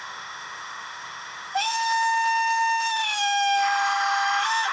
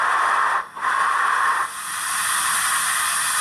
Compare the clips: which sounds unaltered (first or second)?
second